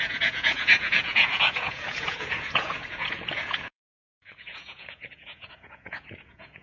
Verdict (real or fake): fake